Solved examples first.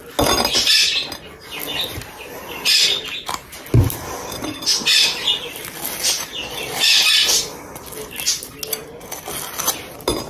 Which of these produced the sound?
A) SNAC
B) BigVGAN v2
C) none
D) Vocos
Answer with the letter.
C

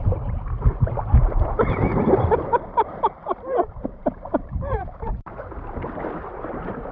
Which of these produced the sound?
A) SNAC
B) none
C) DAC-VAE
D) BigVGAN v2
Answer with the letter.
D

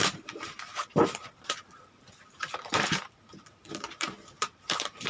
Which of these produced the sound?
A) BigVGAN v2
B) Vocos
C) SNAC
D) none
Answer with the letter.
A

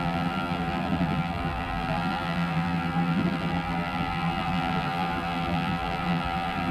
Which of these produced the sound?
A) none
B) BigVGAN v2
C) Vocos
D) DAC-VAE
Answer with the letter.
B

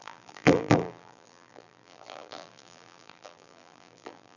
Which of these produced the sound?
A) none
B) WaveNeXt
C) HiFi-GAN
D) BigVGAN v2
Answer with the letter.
D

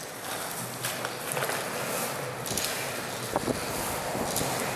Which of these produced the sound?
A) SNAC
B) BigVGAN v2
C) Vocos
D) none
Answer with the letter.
D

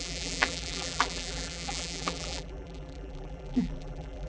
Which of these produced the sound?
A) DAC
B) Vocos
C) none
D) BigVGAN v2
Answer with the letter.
D